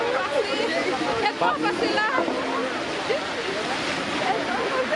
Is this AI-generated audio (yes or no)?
no